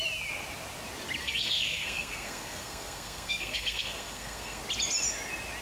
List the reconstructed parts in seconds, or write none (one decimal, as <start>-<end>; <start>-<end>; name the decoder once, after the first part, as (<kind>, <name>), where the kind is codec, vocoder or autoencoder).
1.2-4.6 (codec, SNAC)